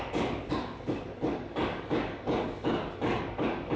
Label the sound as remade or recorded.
remade